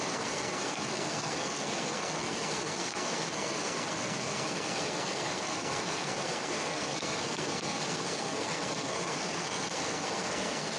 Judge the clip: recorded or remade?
remade